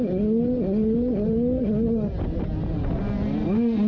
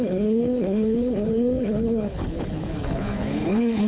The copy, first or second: second